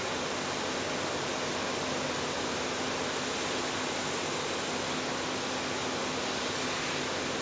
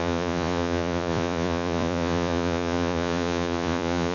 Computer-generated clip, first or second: second